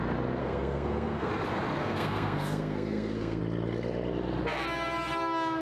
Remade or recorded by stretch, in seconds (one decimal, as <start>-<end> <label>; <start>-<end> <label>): 0.0-0.4 recorded; 0.4-1.3 remade; 1.3-1.8 recorded; 1.8-3.4 remade; 3.4-5.6 recorded